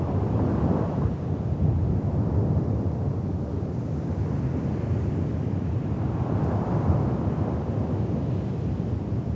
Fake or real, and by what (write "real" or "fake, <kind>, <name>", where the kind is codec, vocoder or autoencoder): real